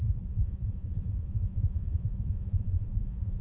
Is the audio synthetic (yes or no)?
yes